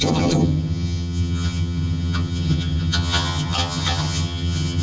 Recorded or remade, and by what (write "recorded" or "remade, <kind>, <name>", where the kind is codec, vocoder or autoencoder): remade, vocoder, HiFi-GAN